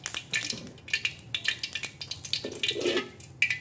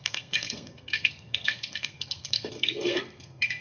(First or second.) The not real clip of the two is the second